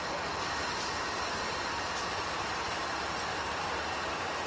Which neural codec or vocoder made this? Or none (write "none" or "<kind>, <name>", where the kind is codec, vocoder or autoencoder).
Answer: none